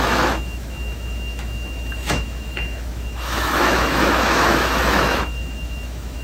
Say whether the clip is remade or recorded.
remade